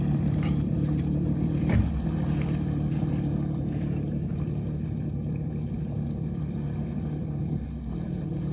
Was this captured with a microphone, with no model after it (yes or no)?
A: yes